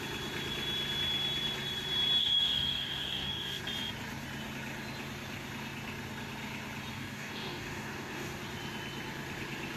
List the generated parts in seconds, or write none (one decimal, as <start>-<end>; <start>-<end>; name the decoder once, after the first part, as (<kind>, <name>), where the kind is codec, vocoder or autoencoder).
2.2-3.6 (codec, DAC); 6.9-8.4